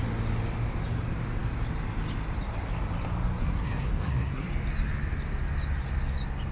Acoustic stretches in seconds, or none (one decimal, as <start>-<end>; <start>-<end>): 0.0-3.4; 4.5-6.5